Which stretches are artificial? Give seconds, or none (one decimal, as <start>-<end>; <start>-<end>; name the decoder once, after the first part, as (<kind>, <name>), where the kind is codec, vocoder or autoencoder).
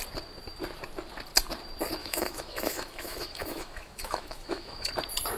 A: 2.0-4.9 (autoencoder, DAC-VAE)